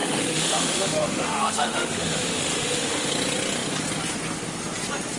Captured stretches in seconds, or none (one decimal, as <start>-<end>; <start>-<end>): 3.1-5.2